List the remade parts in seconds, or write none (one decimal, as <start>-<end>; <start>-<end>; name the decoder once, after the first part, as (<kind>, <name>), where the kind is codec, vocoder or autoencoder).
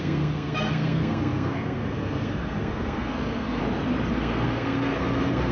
0.0-3.6 (codec, SNAC); 4.1-5.5